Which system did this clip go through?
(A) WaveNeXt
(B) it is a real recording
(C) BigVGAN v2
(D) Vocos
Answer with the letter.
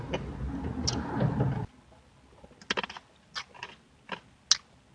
B